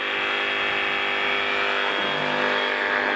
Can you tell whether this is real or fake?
real